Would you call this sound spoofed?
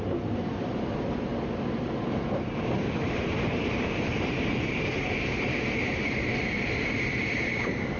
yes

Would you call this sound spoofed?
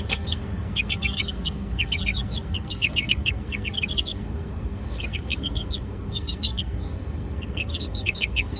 yes